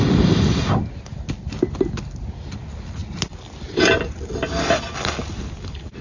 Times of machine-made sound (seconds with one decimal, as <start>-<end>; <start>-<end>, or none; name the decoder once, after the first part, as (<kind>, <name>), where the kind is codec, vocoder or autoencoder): none